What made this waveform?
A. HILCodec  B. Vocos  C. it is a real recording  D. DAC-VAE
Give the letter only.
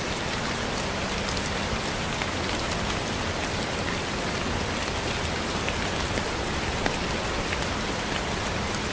C